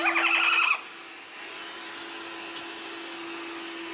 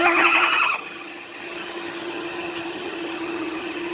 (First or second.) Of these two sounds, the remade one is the second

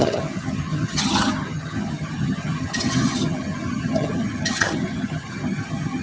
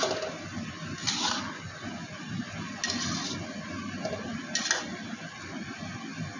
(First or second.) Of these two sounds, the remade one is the first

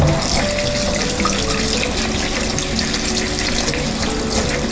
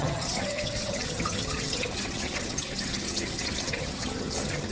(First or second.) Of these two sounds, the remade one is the second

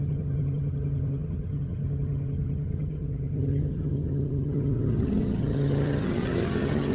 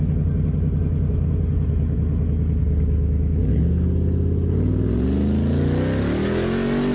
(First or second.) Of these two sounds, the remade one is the first